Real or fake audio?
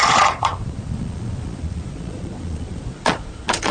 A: fake